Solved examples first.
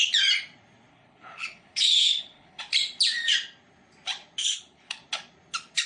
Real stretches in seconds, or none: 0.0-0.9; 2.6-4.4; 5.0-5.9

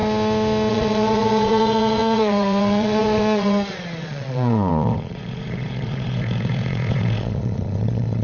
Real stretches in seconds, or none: 0.0-0.7

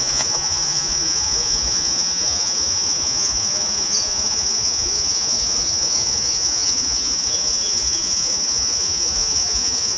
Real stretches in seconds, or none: none

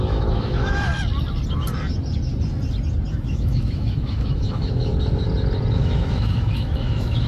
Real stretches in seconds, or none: 0.9-3.1; 4.9-5.8

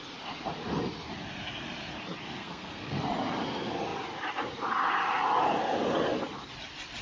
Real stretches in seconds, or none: 0.0-2.4; 3.0-7.0

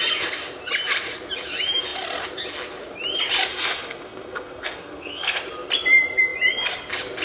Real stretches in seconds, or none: 0.0-3.5; 5.4-7.2

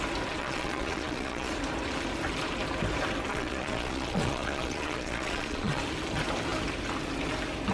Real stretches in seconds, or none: 0.0-0.4; 1.5-3.3; 5.8-7.7